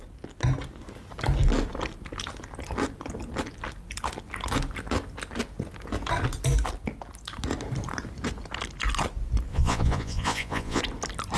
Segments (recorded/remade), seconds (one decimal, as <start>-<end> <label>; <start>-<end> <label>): 0.0-9.5 recorded; 9.5-10.8 remade; 10.8-11.4 recorded